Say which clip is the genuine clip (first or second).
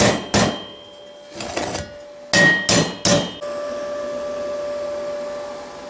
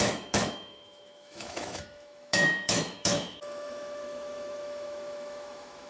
first